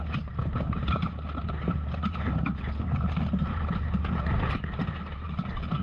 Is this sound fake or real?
fake